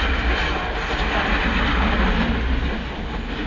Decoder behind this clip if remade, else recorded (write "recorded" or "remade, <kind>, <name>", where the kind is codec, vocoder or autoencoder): recorded